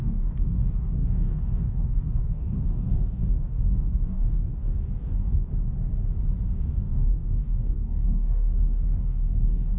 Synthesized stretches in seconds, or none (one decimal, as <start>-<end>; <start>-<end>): 0.0-5.5; 6.6-9.8